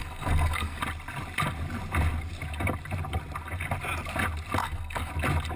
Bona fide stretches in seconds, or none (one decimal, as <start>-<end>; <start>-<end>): 0.8-4.6; 5.1-5.6